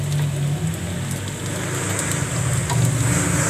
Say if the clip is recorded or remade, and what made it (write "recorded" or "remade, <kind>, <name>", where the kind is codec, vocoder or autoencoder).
recorded